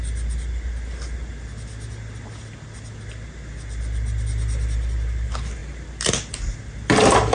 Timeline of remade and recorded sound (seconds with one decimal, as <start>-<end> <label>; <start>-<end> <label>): 0.0-7.3 recorded